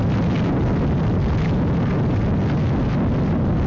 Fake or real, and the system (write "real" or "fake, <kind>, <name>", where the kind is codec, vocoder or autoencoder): real